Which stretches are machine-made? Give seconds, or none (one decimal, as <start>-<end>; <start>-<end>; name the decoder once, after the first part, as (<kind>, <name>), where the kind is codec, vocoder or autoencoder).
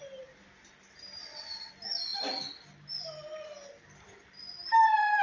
1.2-1.7 (vocoder, WaveNeXt)